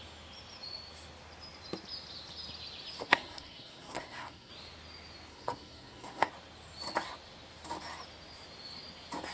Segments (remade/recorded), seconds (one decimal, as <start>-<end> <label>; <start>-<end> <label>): 0.0-3.0 recorded; 3.0-4.5 remade; 4.5-5.3 recorded; 5.3-6.3 remade; 6.3-9.3 recorded